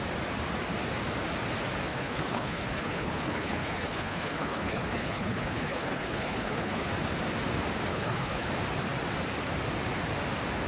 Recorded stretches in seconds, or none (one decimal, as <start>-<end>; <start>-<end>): 0.0-1.9; 6.9-7.9; 8.5-10.7